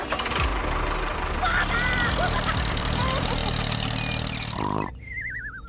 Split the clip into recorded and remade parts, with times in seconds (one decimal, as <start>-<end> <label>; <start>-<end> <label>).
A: 0.0-0.5 remade; 0.5-2.7 recorded; 2.7-3.4 remade; 3.4-4.6 recorded; 4.6-5.7 remade